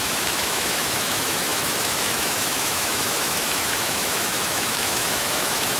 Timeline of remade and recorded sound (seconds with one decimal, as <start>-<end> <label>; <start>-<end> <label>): 0.0-5.8 remade